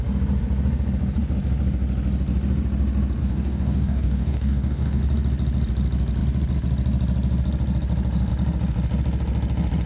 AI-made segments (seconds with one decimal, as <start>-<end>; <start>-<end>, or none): 3.2-5.0